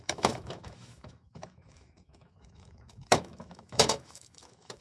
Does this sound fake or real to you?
fake